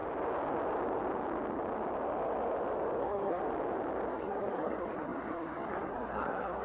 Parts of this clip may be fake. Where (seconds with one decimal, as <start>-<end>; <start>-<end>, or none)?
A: 3.0-3.4; 4.1-6.6